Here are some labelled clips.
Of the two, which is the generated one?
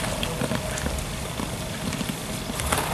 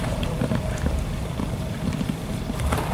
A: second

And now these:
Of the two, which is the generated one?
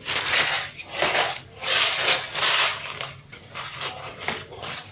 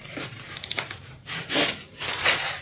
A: second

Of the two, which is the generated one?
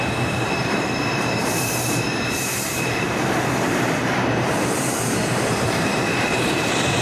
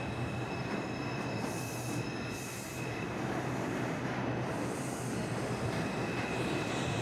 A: first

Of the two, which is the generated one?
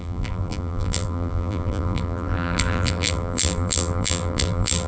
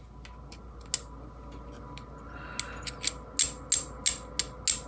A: first